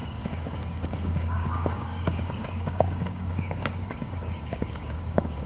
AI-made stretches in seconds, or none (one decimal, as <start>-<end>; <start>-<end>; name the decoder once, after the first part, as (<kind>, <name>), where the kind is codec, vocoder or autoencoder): 0.0-5.5 (codec, DAC)